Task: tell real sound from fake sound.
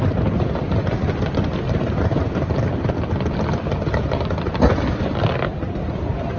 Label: fake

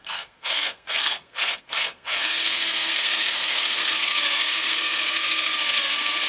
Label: fake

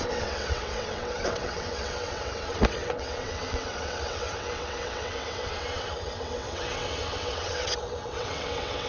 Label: fake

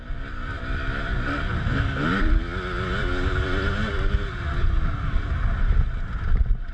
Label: real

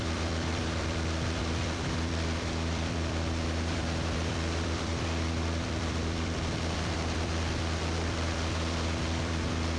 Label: fake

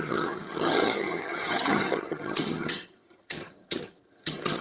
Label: fake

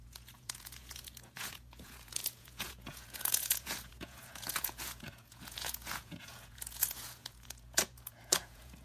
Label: fake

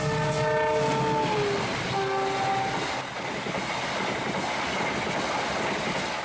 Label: real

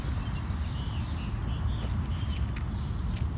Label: real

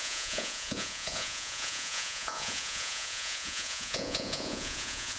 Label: fake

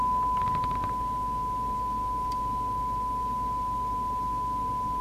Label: real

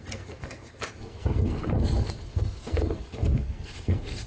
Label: fake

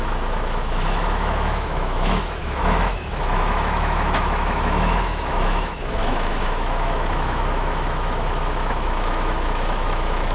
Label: fake